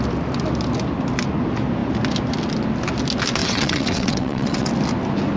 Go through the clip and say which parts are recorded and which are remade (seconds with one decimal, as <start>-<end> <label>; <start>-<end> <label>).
0.0-3.4 recorded; 3.4-4.7 remade; 4.7-5.4 recorded